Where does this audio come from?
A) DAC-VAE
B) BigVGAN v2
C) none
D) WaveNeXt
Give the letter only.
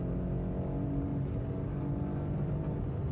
C